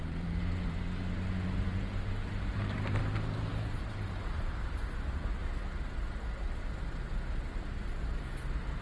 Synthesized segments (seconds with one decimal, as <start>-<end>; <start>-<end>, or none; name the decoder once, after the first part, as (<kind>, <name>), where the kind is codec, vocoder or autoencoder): 0.0-5.4 (vocoder, BigVGAN v2); 7.6-8.8